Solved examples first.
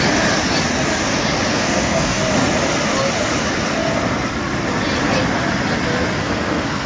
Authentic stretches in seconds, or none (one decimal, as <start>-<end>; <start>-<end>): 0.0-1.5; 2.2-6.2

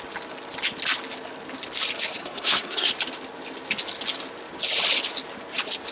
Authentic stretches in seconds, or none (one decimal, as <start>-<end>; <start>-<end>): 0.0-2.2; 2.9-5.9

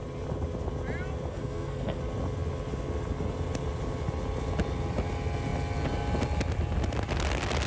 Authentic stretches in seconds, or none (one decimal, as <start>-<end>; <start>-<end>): 0.0-1.3; 2.0-7.7

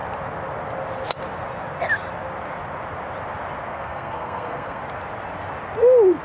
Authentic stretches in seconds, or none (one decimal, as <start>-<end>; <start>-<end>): 0.0-3.7; 4.8-6.2

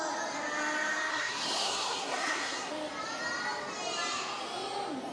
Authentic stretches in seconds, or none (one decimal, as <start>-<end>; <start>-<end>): 0.0-1.1; 2.7-5.1

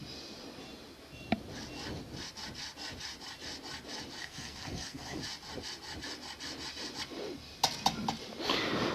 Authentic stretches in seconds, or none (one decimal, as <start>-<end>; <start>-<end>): 0.0-4.2; 5.2-8.9